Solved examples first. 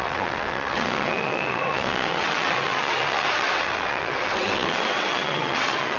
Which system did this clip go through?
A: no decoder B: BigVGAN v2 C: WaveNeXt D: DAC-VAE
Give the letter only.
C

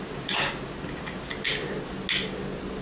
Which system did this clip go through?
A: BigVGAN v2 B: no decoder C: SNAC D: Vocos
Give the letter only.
B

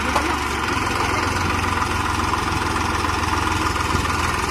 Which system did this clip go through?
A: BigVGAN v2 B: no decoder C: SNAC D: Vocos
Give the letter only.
B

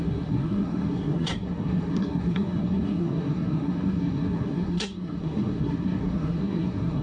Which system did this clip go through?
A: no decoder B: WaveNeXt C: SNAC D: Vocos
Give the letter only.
C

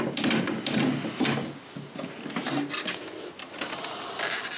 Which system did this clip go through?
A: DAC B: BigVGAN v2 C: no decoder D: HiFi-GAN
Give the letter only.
C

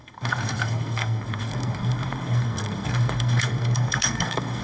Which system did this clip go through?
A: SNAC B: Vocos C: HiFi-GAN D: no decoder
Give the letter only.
A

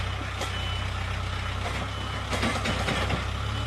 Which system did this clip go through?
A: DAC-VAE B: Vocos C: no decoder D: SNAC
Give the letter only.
C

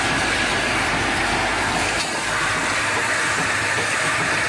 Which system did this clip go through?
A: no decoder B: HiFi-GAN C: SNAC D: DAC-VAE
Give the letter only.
A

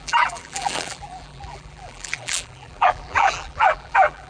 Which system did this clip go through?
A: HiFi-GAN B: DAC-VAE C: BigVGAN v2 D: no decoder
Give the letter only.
C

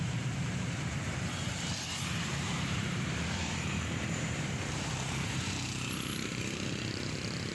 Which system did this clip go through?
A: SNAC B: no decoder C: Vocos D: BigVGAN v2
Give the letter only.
D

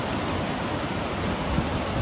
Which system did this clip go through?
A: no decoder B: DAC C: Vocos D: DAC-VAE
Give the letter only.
A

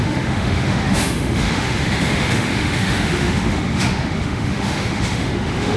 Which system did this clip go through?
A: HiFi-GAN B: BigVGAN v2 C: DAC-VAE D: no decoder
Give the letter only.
C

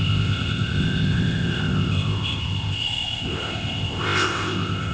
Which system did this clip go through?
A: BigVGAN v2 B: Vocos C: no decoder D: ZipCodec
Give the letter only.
D